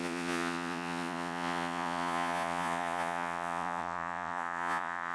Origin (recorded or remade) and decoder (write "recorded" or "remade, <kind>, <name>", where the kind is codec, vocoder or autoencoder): remade, vocoder, Vocos